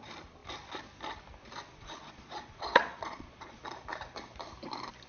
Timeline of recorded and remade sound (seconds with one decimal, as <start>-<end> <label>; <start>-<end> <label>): 0.0-1.7 recorded; 1.7-3.6 remade; 3.6-5.1 recorded